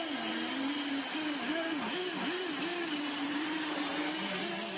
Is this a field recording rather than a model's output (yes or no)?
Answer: yes